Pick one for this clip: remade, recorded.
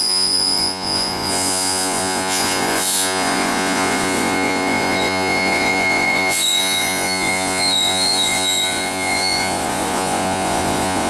remade